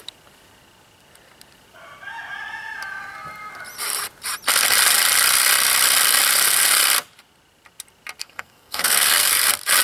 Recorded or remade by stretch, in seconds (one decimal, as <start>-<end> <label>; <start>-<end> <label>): 0.0-8.2 recorded; 8.2-9.3 remade; 9.3-9.8 recorded